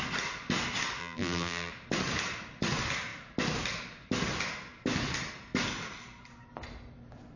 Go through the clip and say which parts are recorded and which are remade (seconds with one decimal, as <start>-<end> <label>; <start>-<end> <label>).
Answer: 0.0-1.0 recorded; 1.0-1.7 remade; 1.7-7.4 recorded